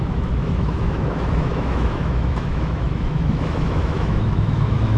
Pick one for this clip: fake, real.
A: fake